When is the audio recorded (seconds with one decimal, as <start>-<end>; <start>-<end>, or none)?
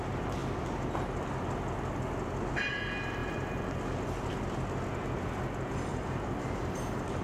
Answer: 0.0-5.9